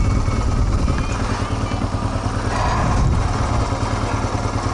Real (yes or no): yes